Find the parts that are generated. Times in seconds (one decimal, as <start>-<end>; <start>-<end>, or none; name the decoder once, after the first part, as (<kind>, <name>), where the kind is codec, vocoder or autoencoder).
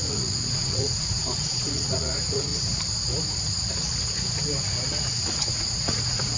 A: 0.0-2.5 (vocoder, Vocos); 5.1-6.4